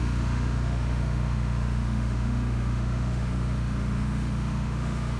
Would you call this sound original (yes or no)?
no